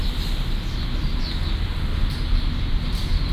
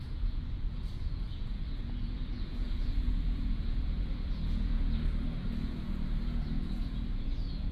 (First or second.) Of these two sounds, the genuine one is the first